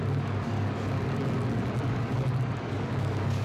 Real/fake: fake